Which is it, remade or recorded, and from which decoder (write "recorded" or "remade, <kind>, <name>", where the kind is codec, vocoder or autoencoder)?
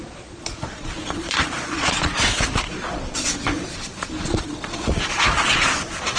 remade, vocoder, Vocos